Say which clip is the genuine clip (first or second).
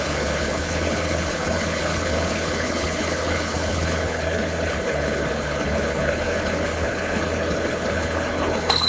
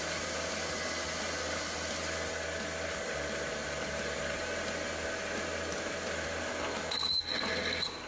second